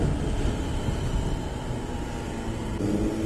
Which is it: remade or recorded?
recorded